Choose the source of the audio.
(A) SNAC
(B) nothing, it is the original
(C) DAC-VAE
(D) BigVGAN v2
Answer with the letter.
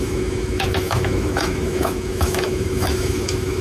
C